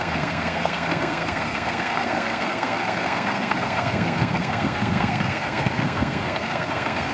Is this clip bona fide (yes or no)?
no